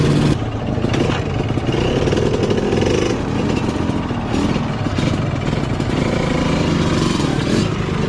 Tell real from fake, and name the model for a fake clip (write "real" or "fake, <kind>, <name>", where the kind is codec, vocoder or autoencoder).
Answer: real